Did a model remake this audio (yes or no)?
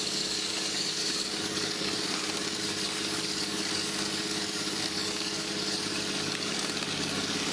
yes